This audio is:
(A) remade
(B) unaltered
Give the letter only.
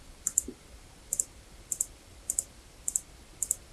A